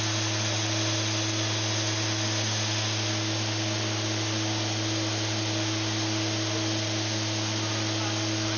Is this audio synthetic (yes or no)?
no